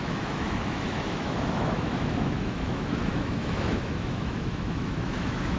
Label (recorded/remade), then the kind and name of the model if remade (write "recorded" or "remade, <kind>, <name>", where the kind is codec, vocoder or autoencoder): remade, autoencoder, DAC-VAE